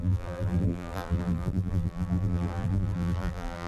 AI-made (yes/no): yes